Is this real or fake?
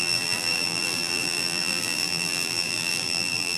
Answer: fake